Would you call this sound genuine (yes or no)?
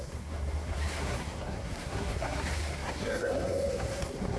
no